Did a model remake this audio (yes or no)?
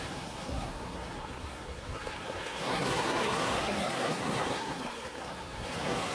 yes